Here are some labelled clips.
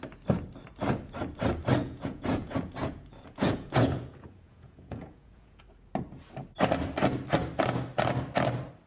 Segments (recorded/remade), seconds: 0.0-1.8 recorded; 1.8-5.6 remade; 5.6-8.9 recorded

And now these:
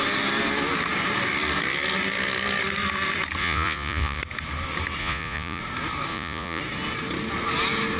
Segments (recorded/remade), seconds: 0.0-3.4 recorded; 3.4-4.2 remade; 4.2-5.0 recorded; 5.0-5.6 remade; 5.6-6.1 recorded; 6.1-6.6 remade; 6.6-8.0 recorded